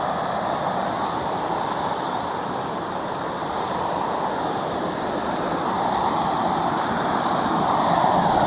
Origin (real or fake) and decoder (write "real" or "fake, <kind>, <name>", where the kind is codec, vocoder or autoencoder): real